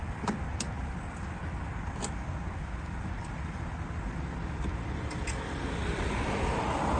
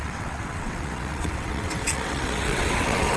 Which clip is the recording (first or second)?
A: first